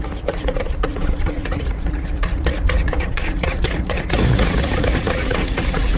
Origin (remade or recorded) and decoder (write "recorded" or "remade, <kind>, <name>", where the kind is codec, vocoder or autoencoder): remade, vocoder, Vocos